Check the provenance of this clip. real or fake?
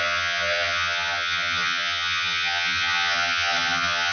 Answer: fake